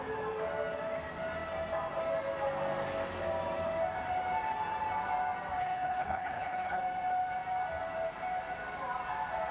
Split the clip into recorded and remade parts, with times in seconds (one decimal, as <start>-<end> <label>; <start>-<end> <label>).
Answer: 0.0-5.6 recorded; 5.6-6.8 remade; 6.8-9.5 recorded